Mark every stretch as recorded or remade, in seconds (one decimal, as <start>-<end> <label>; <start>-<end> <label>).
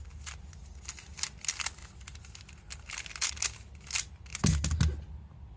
0.0-5.6 recorded